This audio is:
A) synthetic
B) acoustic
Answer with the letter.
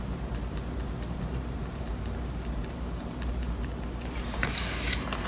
A